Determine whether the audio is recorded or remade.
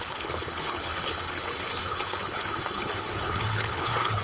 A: remade